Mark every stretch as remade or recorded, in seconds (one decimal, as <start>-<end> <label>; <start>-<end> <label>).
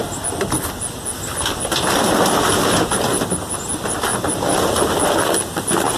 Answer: 0.0-6.0 recorded